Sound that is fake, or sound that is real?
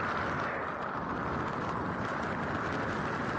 real